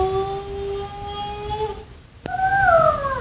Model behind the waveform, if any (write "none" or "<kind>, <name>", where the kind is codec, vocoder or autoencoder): none